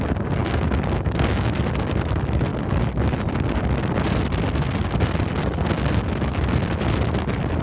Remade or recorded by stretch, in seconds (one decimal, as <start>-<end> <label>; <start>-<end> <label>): 0.0-0.4 recorded; 0.4-1.6 remade; 1.6-7.6 recorded